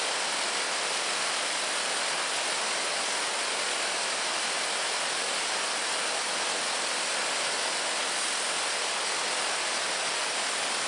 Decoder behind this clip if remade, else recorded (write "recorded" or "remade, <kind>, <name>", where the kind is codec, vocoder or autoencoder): recorded